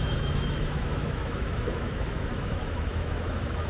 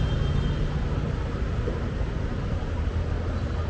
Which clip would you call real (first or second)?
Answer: second